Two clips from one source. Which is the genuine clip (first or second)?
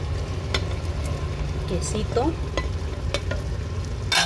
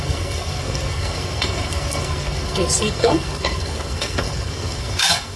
first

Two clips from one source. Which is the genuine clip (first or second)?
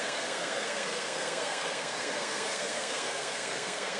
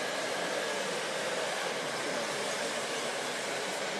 second